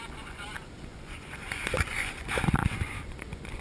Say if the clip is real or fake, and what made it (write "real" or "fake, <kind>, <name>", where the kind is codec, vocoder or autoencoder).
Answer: fake, vocoder, Vocos